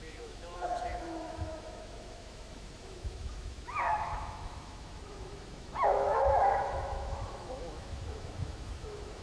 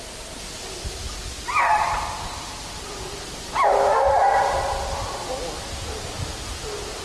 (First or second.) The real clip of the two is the second